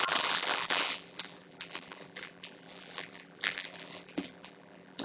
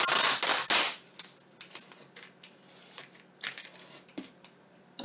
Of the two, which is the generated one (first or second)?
first